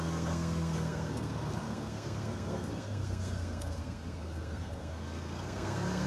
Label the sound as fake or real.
fake